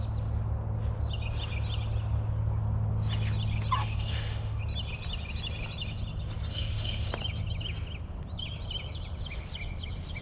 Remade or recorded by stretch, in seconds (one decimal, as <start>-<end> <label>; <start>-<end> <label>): 0.0-3.8 recorded; 3.8-4.6 remade; 4.6-6.5 recorded; 6.5-7.1 remade; 7.1-10.2 recorded